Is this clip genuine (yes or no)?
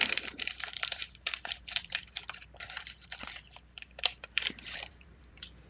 no